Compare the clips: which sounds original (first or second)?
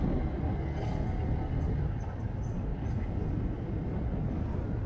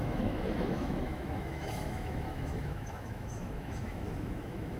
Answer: first